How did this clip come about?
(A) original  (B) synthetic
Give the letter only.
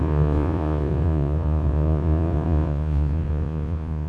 B